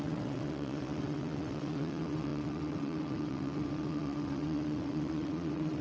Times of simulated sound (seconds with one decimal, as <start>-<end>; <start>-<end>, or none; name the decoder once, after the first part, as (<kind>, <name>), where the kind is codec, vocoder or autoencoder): 0.0-5.8 (vocoder, WaveNeXt)

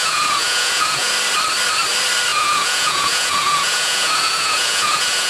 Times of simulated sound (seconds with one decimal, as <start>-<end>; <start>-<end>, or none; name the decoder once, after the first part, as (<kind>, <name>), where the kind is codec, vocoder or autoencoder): 0.0-1.1 (vocoder, Vocos); 2.3-5.3